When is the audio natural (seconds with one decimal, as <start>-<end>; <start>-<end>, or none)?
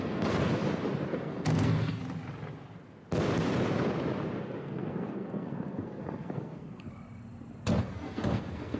0.6-1.1; 2.0-4.4; 6.9-7.8